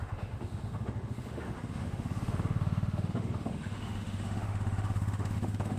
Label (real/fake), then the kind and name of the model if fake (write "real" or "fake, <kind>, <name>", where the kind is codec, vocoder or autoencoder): fake, autoencoder, DAC-VAE